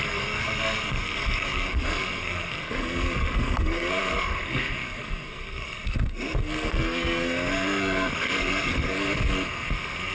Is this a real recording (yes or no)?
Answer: no